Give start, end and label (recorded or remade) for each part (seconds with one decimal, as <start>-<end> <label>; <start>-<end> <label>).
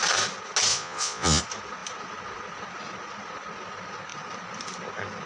0.0-0.7 recorded; 0.7-1.4 remade; 1.4-5.3 recorded